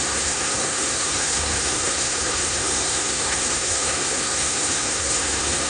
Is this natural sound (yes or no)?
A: no